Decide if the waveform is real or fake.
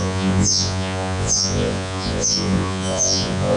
fake